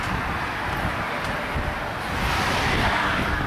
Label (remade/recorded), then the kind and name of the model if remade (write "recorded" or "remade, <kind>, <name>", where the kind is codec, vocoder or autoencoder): recorded